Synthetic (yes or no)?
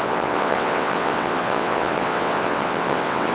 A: yes